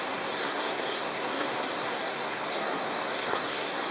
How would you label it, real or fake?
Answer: fake